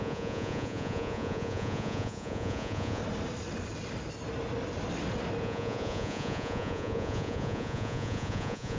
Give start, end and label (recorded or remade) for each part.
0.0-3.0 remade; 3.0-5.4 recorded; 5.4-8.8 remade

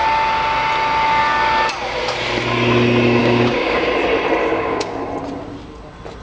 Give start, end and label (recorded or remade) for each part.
0.0-3.2 recorded; 3.2-3.9 remade; 3.9-4.4 recorded; 4.4-5.0 remade; 5.0-6.2 recorded

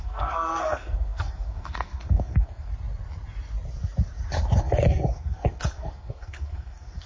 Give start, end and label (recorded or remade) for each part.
0.0-2.7 remade; 2.7-4.6 recorded; 4.6-7.1 remade